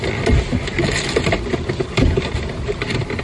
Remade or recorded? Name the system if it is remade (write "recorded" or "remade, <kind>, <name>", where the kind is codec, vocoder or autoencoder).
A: recorded